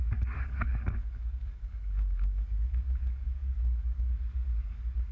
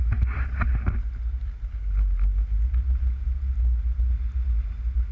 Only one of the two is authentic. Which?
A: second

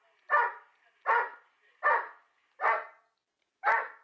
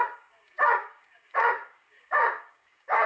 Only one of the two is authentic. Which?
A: first